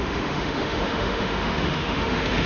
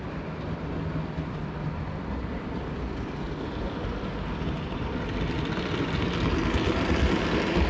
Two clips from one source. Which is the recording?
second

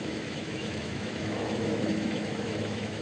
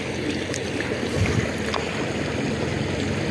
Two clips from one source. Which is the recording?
second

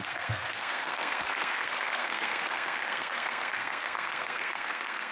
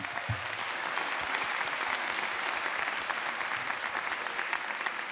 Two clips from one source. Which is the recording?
second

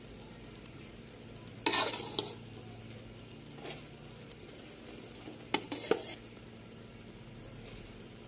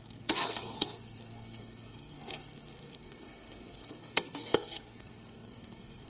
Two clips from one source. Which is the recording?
first